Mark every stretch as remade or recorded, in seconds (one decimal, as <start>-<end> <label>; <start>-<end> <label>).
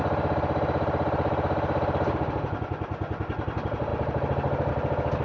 0.0-5.2 recorded